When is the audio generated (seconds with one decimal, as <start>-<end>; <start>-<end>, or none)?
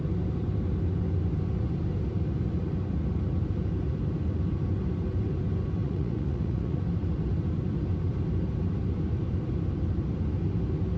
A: 5.8-6.8